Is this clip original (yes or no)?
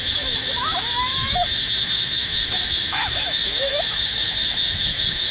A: no